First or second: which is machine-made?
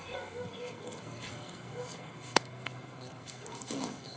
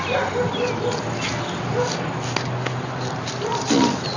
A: first